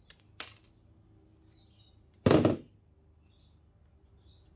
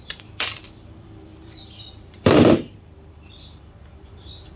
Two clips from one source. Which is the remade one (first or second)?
second